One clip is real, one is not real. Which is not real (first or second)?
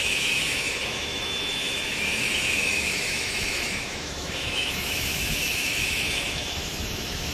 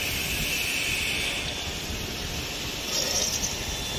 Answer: first